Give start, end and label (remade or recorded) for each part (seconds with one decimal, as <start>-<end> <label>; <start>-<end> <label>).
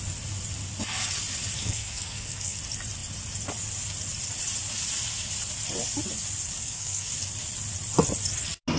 0.0-1.6 recorded; 1.6-2.6 remade; 2.6-6.6 recorded; 6.6-7.1 remade; 7.1-8.8 recorded